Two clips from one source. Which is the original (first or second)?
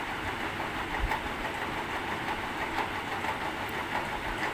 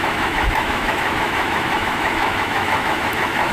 first